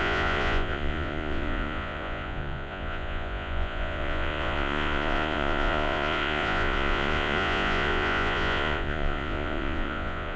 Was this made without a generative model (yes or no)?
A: no